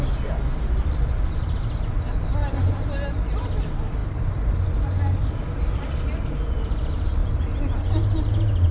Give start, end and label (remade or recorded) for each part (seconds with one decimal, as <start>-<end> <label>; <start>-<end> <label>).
0.0-8.7 recorded